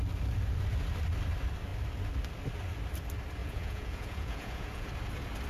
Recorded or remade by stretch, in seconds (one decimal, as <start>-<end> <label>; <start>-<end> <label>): 0.0-3.4 recorded; 3.4-4.9 remade; 4.9-5.5 recorded